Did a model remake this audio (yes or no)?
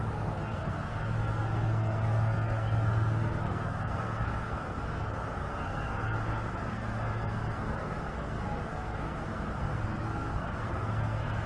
yes